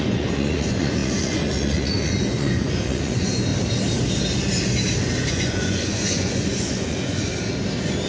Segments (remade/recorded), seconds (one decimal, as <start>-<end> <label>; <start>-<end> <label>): 0.0-3.5 remade; 3.5-5.3 recorded; 5.3-7.3 remade; 7.3-8.1 recorded